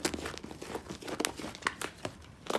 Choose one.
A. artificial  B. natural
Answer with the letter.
B